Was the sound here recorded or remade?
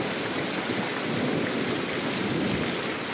recorded